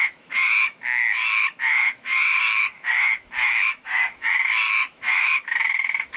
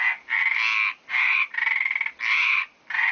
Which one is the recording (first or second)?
second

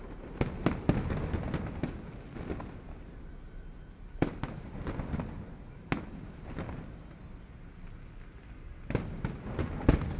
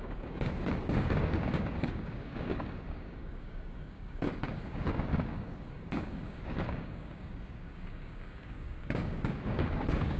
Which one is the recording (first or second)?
first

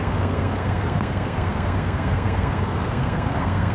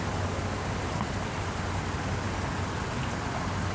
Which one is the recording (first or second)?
second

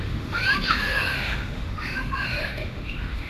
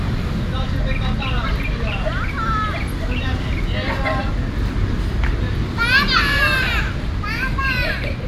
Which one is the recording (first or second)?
second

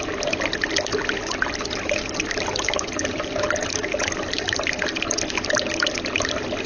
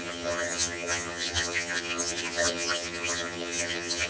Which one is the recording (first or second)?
first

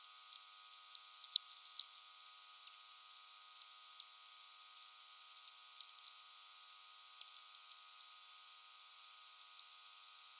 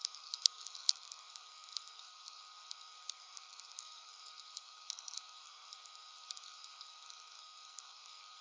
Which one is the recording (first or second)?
first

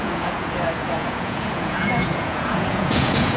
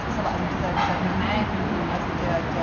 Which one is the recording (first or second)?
second